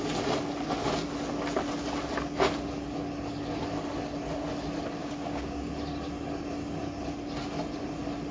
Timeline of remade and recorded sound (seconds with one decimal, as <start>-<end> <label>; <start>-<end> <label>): 0.0-5.0 recorded; 5.0-5.7 remade; 5.7-8.3 recorded